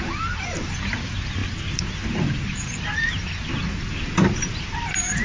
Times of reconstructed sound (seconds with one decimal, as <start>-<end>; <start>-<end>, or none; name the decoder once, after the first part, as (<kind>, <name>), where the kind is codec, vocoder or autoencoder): none

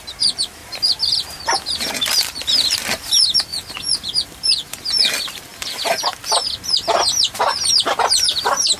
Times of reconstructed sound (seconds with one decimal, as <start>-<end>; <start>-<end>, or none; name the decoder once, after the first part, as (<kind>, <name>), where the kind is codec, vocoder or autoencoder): 0.0-8.8 (vocoder, BigVGAN v2)

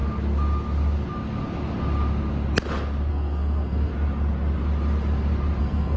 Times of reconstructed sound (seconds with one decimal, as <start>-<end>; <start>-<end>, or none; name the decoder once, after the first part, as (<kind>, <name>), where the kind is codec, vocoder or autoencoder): 3.1-3.9 (codec, SNAC); 5.6-6.0

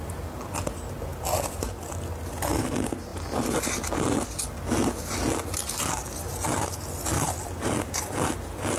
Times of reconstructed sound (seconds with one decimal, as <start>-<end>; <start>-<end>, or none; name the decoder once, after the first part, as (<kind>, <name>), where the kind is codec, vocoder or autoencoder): none

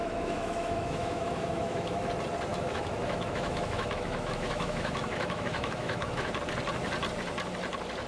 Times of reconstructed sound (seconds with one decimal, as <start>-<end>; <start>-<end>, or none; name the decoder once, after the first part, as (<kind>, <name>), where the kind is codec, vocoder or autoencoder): 0.0-2.1 (autoencoder, DAC-VAE); 2.5-6.3

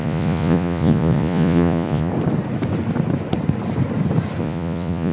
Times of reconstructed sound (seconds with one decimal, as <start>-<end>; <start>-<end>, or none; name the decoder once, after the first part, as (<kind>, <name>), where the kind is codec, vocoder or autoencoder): 0.0-2.1 (vocoder, Vocos); 4.4-5.1

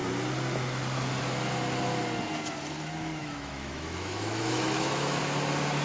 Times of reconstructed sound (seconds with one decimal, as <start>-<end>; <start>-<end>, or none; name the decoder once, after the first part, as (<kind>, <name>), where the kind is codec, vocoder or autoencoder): 3.2-5.2 (autoencoder, DAC-VAE)